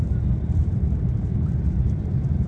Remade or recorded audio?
remade